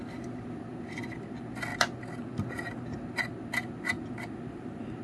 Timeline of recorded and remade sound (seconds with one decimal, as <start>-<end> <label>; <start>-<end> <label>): 0.0-5.0 recorded